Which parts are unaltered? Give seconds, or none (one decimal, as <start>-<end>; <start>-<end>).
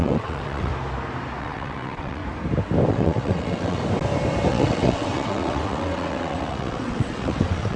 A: 0.7-1.4; 2.2-2.9; 3.8-4.5